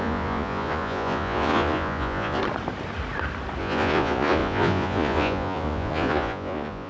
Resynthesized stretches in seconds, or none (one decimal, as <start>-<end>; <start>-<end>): 0.0-2.4; 3.6-6.9